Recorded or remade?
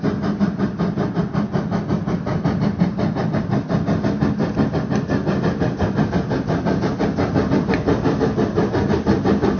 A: recorded